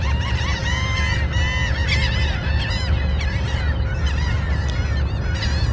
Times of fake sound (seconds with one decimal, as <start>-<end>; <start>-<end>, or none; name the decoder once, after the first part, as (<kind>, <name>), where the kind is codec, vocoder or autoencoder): none